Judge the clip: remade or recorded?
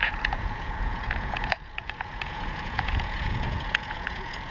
remade